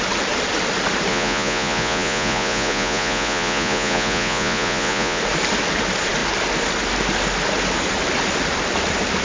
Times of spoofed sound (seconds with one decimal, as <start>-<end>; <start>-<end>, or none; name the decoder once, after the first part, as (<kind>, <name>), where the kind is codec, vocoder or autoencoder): 1.1-5.2 (vocoder, Vocos)